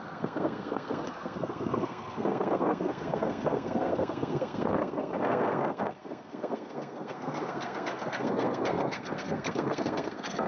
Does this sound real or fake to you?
fake